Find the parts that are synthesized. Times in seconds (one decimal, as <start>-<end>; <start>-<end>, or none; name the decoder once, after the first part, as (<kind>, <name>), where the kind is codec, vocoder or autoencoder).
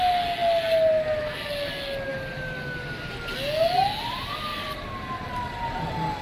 none